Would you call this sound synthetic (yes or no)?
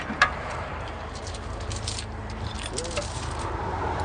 yes